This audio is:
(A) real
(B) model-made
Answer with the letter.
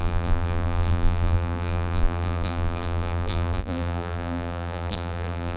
B